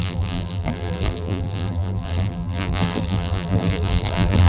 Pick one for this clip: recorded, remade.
remade